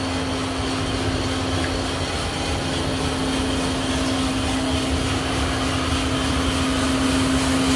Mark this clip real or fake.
real